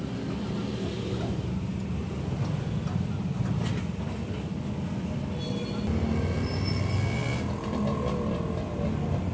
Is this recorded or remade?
recorded